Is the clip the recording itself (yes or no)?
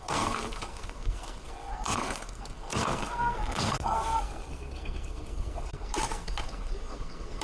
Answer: no